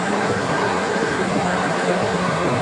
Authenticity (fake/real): fake